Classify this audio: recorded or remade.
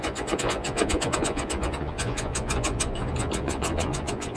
remade